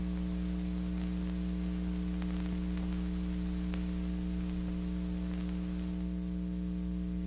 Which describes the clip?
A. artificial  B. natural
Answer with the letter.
B